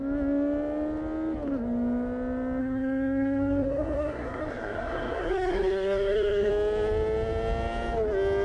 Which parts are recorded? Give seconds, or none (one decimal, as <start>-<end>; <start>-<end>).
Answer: 0.0-2.6; 6.5-8.4